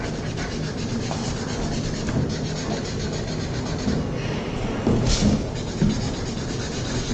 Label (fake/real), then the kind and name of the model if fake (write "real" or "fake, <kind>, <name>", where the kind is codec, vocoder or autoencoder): real